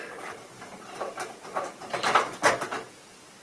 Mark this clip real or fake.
real